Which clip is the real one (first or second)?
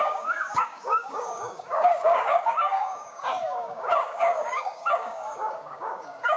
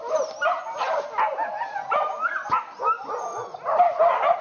second